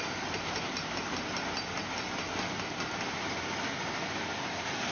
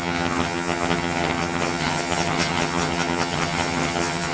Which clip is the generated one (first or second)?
second